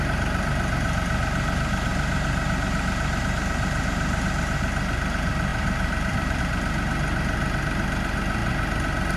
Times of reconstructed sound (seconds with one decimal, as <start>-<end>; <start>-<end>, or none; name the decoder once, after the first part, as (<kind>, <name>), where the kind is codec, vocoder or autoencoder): 5.5-6.4 (vocoder, BigVGAN v2)